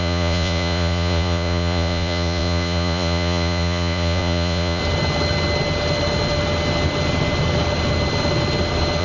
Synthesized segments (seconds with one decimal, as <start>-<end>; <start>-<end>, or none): 0.0-4.8